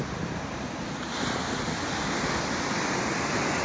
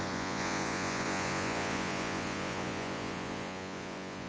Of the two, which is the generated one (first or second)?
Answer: second